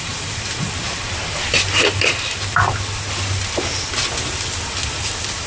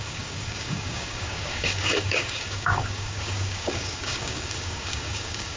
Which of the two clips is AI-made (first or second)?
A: second